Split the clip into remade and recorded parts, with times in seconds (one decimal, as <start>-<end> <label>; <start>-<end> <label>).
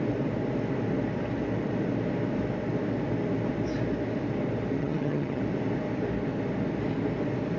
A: 0.0-4.8 recorded; 4.8-5.4 remade; 5.4-7.6 recorded